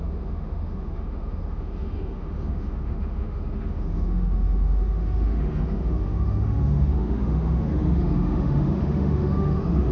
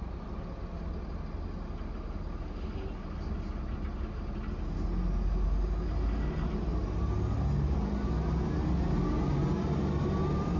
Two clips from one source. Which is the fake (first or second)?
first